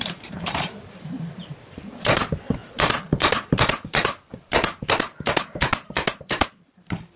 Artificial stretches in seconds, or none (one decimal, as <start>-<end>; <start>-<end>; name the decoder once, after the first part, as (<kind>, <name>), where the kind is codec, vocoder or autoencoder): 0.0-7.2 (vocoder, BigVGAN v2)